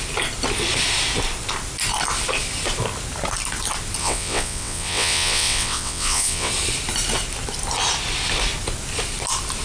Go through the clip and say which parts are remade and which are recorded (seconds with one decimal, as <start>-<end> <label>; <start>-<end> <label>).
0.0-4.0 recorded; 4.0-6.5 remade; 6.5-9.6 recorded